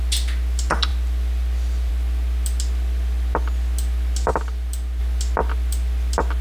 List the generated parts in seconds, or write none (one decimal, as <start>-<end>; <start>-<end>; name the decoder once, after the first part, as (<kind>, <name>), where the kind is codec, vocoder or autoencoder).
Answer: none